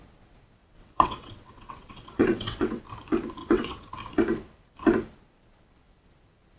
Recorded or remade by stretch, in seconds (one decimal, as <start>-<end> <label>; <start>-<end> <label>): 0.0-0.6 recorded; 0.6-2.8 remade; 2.8-3.4 recorded; 3.4-3.9 remade; 3.9-6.6 recorded

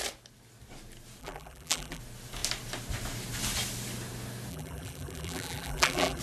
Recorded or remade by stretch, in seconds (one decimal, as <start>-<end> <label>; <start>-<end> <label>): 0.0-1.2 recorded; 1.2-2.0 remade; 2.0-4.5 recorded; 4.5-6.2 remade

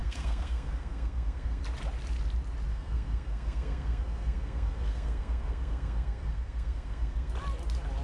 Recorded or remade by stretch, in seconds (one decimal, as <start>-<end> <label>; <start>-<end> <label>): 0.0-1.6 remade; 1.6-2.7 recorded; 2.7-7.3 remade; 7.3-8.0 recorded

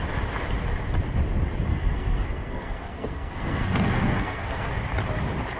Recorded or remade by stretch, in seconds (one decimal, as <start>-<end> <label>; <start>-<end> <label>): 0.0-1.7 recorded; 1.7-4.7 remade; 4.7-5.6 recorded

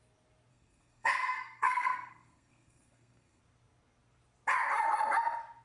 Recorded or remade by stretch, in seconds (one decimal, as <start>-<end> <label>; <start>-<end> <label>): 0.0-0.5 recorded; 0.5-3.4 remade; 3.4-5.6 recorded

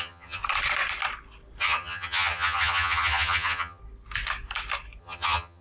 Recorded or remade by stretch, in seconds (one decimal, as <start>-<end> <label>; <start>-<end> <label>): 0.0-0.4 remade; 0.4-1.6 recorded; 1.6-3.8 remade; 3.8-5.0 recorded; 5.0-5.6 remade

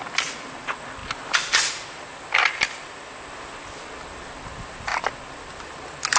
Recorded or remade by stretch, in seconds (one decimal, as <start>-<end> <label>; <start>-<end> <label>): 0.0-6.2 recorded

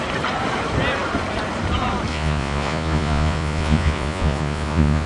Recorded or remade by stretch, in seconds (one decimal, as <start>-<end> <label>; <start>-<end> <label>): 0.0-2.1 recorded; 2.1-5.1 remade